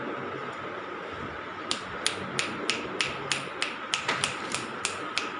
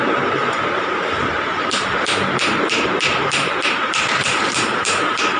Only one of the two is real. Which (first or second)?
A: first